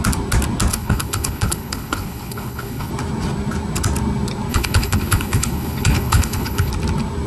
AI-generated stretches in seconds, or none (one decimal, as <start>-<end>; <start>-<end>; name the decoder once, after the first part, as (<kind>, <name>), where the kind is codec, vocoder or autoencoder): 0.7-2.9 (codec, HILCodec); 4.5-6.7